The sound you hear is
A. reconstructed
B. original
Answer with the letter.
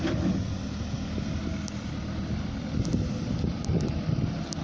B